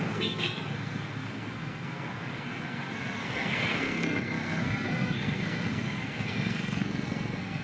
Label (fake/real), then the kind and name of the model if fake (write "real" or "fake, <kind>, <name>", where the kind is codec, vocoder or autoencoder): fake, codec, SNAC